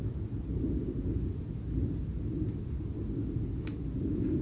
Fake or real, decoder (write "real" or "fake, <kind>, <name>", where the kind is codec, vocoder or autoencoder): real